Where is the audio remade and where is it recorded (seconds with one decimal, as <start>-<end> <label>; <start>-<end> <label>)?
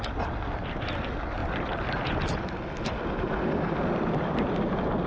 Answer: 0.0-1.4 recorded; 1.4-4.5 remade; 4.5-5.1 recorded